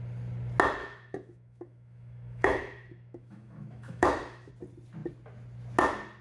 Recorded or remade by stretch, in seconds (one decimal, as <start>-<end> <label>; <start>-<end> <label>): 0.0-0.8 recorded; 0.8-4.5 remade; 4.5-6.2 recorded